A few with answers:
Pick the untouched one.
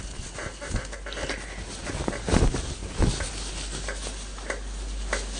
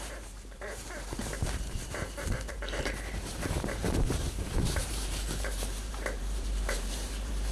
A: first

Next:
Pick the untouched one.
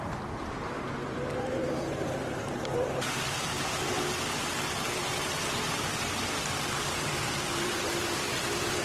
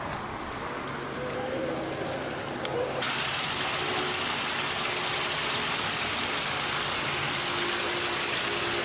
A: second